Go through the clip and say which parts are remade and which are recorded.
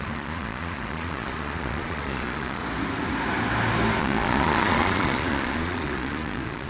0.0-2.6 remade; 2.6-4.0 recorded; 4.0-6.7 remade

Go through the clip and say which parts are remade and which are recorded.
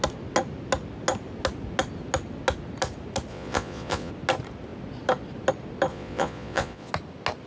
0.0-3.3 recorded; 3.3-4.1 remade; 4.1-5.9 recorded; 5.9-6.9 remade; 6.9-7.5 recorded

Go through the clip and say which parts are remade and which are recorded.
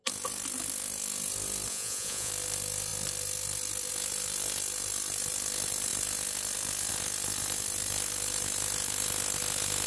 0.0-1.7 recorded; 1.7-2.3 remade; 2.3-9.9 recorded